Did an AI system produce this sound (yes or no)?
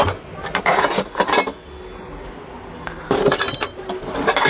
no